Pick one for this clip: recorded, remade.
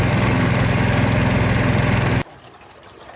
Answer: recorded